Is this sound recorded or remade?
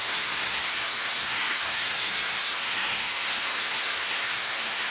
remade